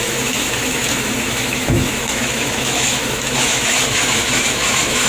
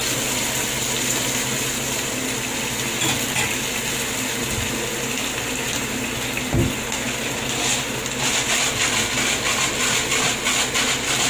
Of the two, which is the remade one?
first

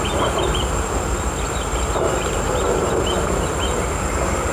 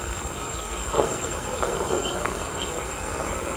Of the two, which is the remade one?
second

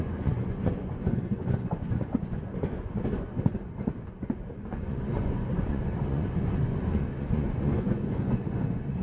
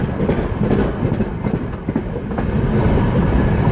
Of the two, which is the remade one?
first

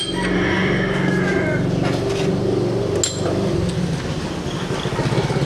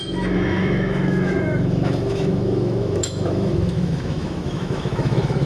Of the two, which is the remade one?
second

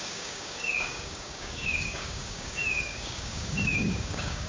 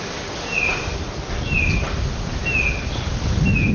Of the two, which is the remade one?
first